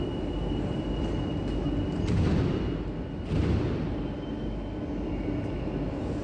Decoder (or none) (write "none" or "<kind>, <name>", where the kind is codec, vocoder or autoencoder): none